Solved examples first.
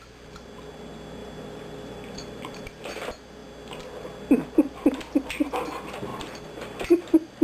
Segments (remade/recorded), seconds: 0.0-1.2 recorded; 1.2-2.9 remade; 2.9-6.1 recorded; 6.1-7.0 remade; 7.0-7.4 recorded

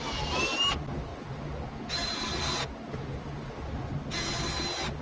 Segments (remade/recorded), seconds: 0.0-5.0 recorded

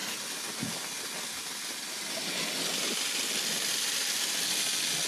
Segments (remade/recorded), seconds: 0.0-5.1 recorded

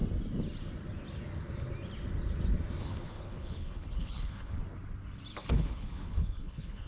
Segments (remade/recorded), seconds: 0.0-2.8 recorded; 2.8-4.6 remade; 4.6-5.3 recorded; 5.3-6.9 remade